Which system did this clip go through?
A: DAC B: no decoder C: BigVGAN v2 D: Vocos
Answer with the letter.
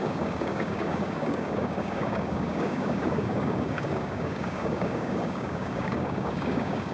A